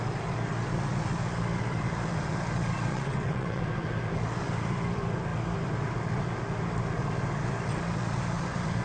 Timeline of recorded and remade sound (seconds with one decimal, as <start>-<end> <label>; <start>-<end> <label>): 0.0-2.9 recorded; 2.9-3.6 remade; 3.6-8.8 recorded